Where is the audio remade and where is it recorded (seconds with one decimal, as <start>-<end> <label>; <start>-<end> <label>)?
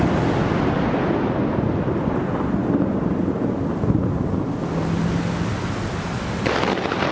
0.0-7.1 recorded